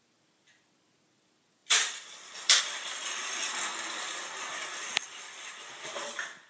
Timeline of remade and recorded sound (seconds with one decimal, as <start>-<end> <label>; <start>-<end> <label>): 0.0-1.6 recorded; 1.6-2.6 remade; 2.6-3.7 recorded; 3.7-4.4 remade; 4.4-6.5 recorded